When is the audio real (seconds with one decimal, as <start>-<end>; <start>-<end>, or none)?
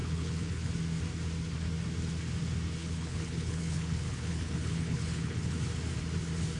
0.7-2.8; 5.6-6.6